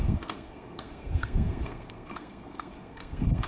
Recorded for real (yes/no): no